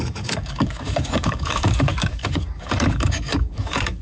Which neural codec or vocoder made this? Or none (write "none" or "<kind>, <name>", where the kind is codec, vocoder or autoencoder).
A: codec, DAC